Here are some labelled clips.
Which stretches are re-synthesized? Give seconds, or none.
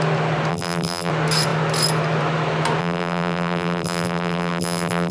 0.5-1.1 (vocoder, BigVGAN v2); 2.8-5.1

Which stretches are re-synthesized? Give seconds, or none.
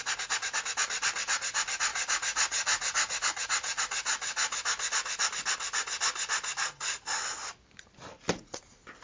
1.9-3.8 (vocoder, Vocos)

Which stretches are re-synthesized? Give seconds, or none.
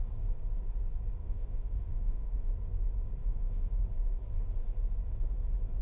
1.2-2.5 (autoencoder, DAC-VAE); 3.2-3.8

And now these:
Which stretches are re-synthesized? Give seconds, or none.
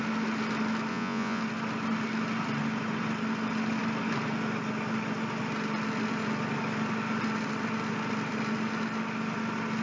0.9-1.4 (vocoder, Vocos)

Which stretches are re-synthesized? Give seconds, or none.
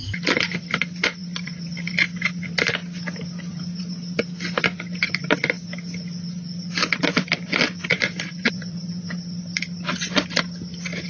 1.2-2.0 (vocoder, BigVGAN v2); 7.5-8.9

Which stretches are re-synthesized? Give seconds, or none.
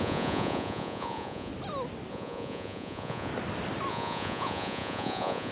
0.0-1.5 (vocoder, Vocos); 2.1-3.3; 3.9-5.5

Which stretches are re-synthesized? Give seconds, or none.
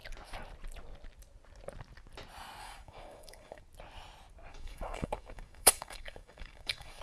2.6-3.6 (codec, DAC); 4.5-7.0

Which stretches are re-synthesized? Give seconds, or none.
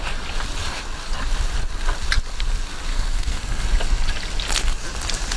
2.9-3.4 (codec, SNAC)